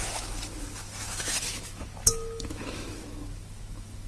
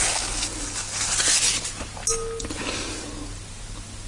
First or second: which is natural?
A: second